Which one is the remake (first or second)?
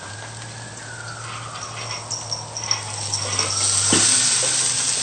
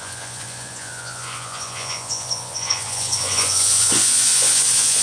second